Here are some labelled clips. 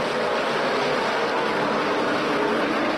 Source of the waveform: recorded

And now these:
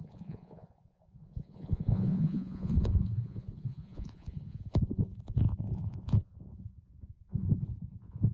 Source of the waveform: remade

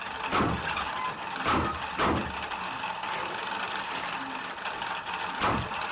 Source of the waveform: recorded